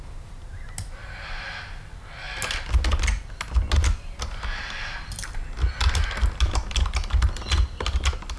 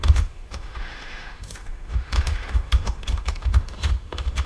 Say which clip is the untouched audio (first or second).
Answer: first